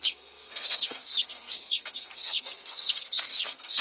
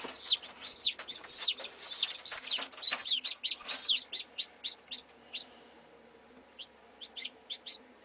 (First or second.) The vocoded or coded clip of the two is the first